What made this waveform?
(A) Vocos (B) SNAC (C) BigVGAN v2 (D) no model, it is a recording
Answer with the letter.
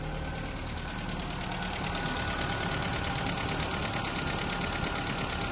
D